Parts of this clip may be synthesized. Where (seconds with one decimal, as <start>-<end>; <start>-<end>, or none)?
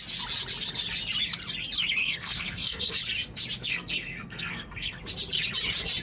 2.0-2.9; 3.6-5.0